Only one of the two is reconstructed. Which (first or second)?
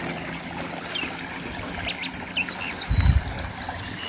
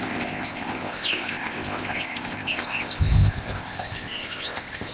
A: second